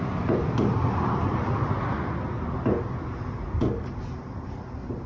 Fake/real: real